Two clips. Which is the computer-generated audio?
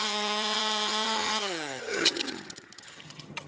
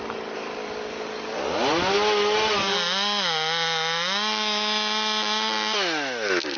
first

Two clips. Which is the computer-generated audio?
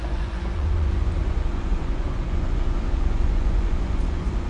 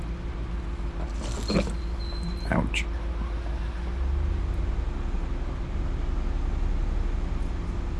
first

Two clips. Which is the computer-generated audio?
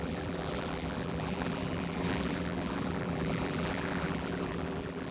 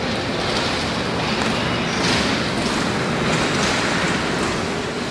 first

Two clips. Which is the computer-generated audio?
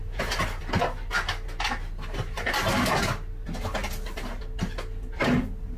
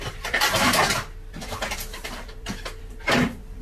second